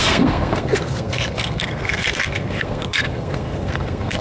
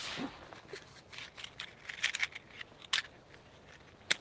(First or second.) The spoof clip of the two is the first